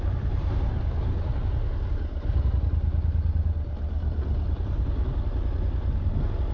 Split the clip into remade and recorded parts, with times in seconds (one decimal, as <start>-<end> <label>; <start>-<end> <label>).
0.0-6.5 recorded